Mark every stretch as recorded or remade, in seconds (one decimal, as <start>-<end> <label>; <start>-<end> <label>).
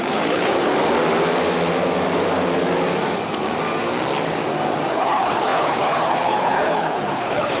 0.0-0.7 remade; 0.7-4.9 recorded; 4.9-7.6 remade